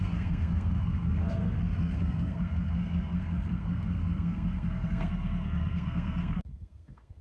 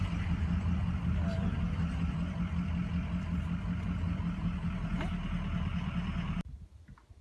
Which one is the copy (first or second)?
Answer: first